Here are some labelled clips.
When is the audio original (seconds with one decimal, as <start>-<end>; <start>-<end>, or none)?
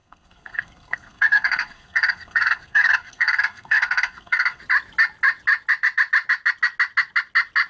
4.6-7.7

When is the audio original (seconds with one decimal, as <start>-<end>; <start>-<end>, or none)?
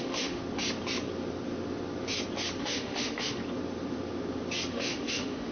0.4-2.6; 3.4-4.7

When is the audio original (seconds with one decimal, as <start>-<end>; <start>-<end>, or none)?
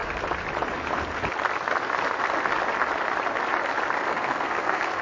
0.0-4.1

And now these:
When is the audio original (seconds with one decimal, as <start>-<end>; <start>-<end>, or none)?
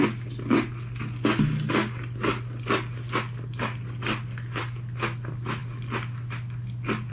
0.0-7.1